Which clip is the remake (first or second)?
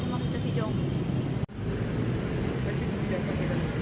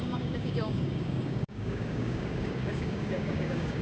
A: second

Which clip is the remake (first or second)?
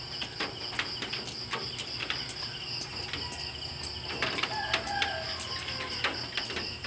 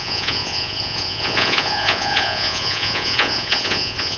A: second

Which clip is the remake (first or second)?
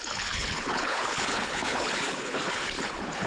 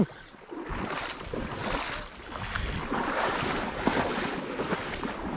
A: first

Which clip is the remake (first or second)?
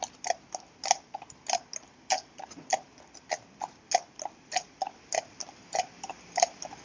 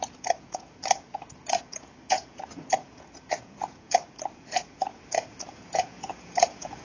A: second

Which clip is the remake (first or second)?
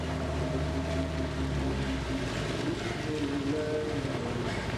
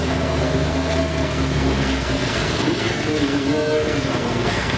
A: second